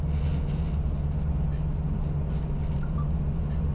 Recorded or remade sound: recorded